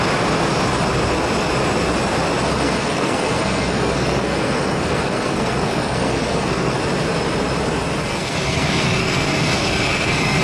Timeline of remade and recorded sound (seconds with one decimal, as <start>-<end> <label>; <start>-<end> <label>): 0.0-2.5 recorded; 2.5-6.8 remade; 6.8-8.1 recorded; 8.1-10.4 remade